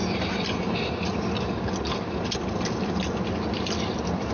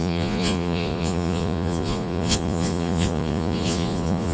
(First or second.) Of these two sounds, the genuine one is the first